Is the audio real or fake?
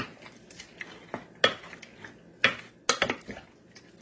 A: real